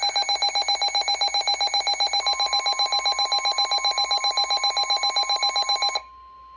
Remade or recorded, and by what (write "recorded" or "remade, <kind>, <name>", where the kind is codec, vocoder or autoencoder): recorded